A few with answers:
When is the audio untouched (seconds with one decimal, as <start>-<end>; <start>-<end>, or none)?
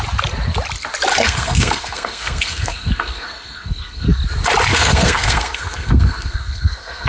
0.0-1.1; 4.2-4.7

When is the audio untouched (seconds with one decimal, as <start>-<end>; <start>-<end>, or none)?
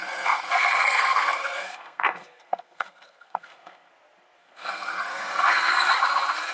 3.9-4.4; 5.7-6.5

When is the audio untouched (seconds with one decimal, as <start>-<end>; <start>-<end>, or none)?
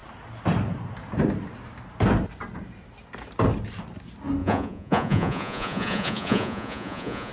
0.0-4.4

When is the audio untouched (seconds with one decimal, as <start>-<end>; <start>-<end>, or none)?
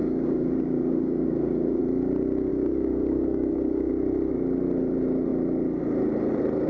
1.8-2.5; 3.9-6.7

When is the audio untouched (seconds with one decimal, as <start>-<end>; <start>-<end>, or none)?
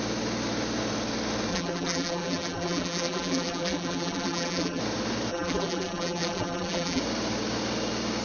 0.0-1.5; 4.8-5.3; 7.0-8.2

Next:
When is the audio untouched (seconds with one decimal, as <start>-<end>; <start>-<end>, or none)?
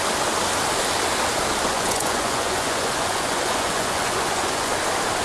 0.0-1.7; 4.7-5.2